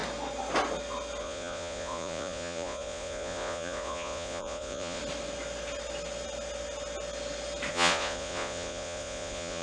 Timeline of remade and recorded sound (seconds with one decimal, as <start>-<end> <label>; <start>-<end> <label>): 0.0-1.2 recorded; 1.2-5.0 remade; 5.0-7.7 recorded; 7.7-9.6 remade